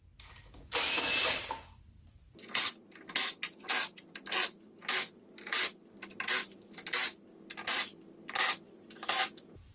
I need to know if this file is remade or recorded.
recorded